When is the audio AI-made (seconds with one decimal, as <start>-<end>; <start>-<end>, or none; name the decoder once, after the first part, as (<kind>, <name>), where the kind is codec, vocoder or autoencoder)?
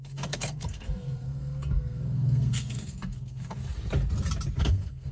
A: 0.0-3.6 (codec, SNAC); 4.6-5.1